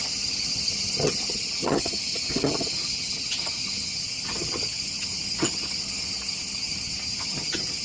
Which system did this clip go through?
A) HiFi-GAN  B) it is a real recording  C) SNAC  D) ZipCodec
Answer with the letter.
A